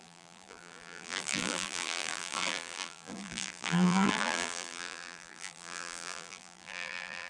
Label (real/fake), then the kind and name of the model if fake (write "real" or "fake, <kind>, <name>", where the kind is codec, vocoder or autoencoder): fake, vocoder, BigVGAN v2